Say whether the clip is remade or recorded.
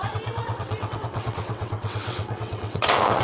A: remade